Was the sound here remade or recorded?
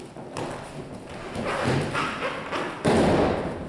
recorded